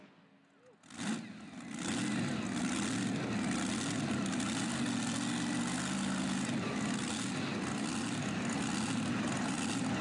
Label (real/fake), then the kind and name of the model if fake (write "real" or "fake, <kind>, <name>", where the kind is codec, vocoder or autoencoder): real